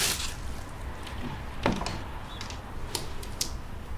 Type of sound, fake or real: real